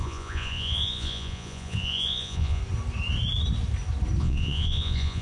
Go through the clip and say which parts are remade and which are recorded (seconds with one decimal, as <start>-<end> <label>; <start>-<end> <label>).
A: 0.0-2.6 remade; 2.6-4.2 recorded; 4.2-5.2 remade